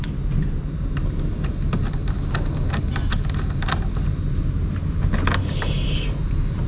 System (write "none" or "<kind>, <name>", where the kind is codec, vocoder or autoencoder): none